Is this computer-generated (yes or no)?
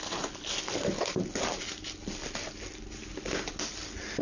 no